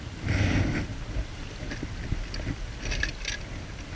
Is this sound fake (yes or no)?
no